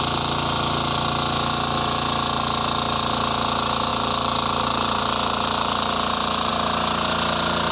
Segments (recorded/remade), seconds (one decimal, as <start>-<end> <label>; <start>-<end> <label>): 0.0-3.9 recorded; 3.9-6.5 remade; 6.5-7.7 recorded